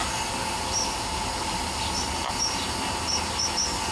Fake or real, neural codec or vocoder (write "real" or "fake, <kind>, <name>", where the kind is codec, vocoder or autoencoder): real